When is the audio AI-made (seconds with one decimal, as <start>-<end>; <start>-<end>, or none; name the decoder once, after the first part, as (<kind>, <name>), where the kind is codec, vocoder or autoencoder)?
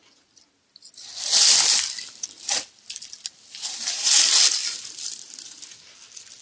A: none